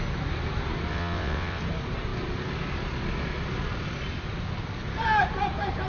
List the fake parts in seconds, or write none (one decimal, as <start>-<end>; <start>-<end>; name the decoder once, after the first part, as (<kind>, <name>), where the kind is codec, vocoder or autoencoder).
0.9-1.6 (vocoder, WaveNeXt)